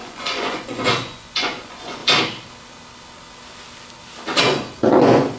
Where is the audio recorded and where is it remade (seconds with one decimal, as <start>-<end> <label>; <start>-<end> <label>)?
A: 0.0-2.0 remade; 2.0-4.4 recorded; 4.4-5.4 remade